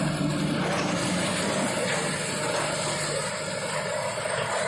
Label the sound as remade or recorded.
recorded